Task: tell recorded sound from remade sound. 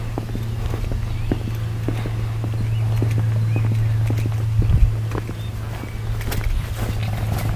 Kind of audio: recorded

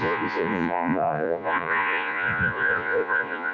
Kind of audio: remade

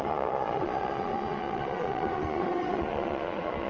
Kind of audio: remade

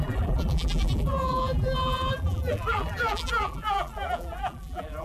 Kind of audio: remade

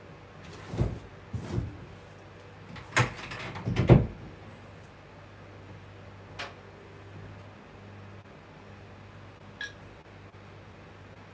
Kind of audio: recorded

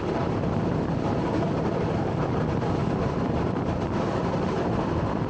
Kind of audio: recorded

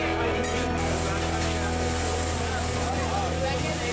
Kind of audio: recorded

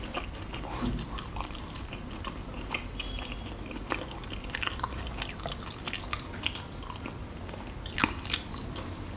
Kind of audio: recorded